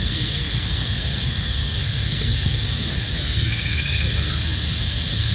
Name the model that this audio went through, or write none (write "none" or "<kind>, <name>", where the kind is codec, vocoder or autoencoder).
codec, SNAC